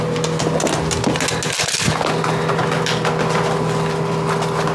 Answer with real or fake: real